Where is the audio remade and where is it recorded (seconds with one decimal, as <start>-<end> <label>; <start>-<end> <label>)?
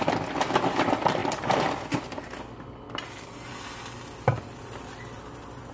0.0-5.7 recorded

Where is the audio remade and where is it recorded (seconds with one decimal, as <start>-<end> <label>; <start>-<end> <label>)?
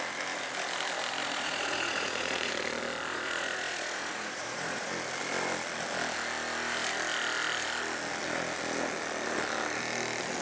0.0-1.2 recorded; 1.2-2.5 remade; 2.5-3.1 recorded; 3.1-4.9 remade; 4.9-10.4 recorded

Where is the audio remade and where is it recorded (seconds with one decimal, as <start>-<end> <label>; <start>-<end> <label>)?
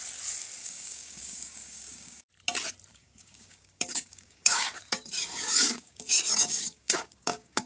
0.0-0.6 recorded; 0.6-2.3 remade; 2.3-2.9 recorded; 2.9-7.7 remade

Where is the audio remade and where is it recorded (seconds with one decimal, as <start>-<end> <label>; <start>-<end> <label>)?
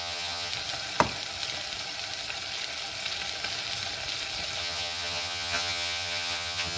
0.0-0.5 remade; 0.5-4.6 recorded; 4.6-6.8 remade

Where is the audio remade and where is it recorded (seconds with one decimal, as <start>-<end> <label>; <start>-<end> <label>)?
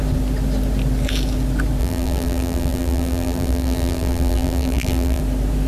0.0-1.8 recorded; 1.8-5.2 remade; 5.2-5.7 recorded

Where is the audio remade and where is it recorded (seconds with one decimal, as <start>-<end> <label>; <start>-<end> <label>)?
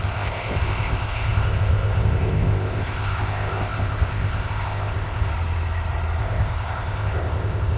0.0-5.3 remade; 5.3-6.2 recorded; 6.2-7.8 remade